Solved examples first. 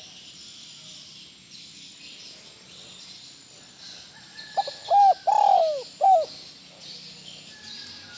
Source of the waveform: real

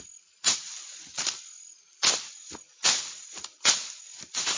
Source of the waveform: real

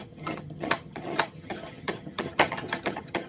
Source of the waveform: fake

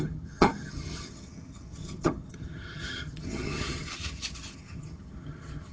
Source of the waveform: fake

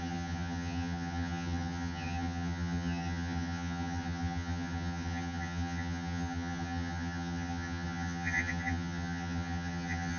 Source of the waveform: fake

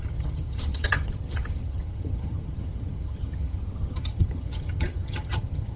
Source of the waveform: fake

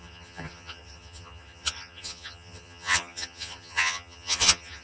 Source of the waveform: fake